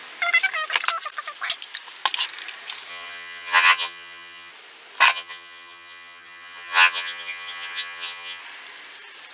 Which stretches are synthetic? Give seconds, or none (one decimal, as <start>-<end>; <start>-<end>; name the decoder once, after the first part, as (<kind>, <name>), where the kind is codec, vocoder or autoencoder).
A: 2.9-4.5 (vocoder, HiFi-GAN); 5.1-8.4